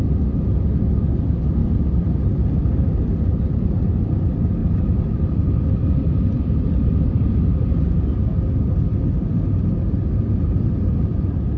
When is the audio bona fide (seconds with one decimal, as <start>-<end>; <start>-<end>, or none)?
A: 0.0-1.6; 3.6-4.6; 8.0-11.6